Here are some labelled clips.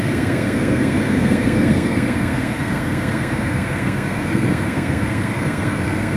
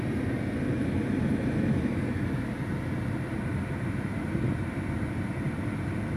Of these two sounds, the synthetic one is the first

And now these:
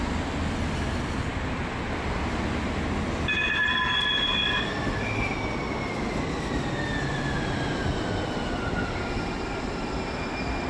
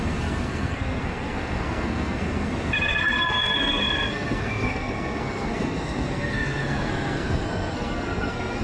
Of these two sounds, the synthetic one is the second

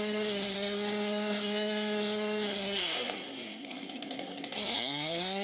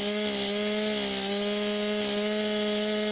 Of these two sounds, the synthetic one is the first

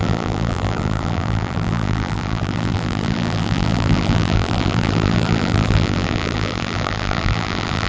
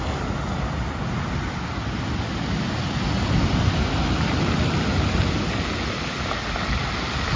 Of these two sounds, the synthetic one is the first